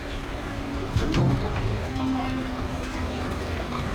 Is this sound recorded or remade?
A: remade